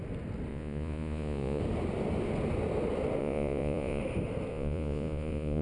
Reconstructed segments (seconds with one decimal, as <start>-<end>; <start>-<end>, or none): 0.5-1.6; 3.2-4.0; 4.5-5.6